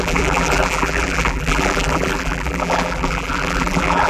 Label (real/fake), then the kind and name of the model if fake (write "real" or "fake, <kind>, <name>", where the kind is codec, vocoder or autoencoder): fake, vocoder, BigVGAN v2